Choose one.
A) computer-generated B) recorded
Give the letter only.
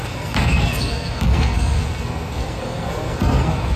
A